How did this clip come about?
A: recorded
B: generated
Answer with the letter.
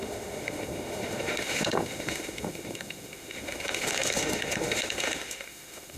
B